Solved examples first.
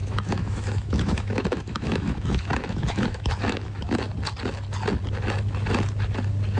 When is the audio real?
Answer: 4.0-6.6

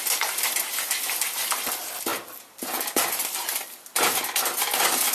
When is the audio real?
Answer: 0.0-5.1

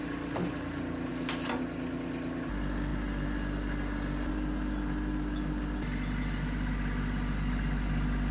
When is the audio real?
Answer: 0.0-8.3

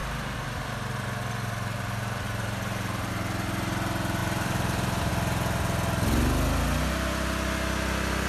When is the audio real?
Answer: 3.1-4.2; 5.1-8.3